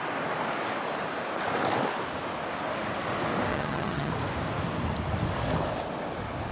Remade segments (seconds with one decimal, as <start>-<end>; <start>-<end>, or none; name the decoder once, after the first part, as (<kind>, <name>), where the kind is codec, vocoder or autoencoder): 3.5-4.1 (vocoder, HiFi-GAN)